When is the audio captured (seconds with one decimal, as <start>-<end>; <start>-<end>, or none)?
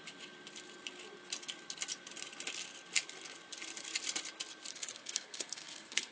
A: 0.0-4.7